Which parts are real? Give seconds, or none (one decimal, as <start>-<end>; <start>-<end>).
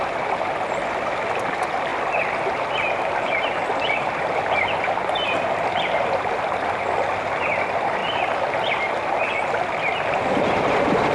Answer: 0.0-1.9; 6.3-11.1